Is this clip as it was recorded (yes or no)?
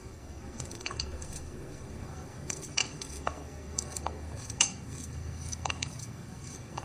no